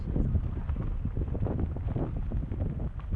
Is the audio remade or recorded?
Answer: recorded